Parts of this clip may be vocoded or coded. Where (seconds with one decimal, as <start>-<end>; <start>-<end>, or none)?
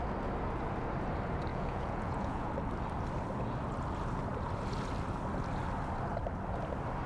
1.5-2.5